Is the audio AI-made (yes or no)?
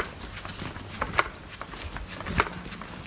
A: no